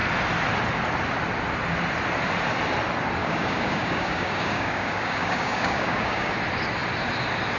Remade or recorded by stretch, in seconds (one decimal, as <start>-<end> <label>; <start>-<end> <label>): 0.0-3.2 recorded; 3.2-6.3 remade; 6.3-7.6 recorded